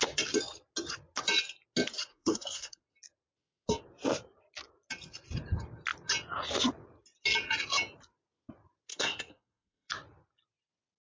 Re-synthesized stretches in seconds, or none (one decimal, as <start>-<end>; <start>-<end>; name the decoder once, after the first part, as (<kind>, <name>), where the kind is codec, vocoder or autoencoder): 2.1-2.8 (codec, SNAC); 8.9-9.9